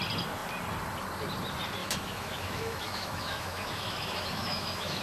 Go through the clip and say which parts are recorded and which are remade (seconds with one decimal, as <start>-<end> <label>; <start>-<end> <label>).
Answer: 0.0-1.8 recorded; 1.8-5.0 remade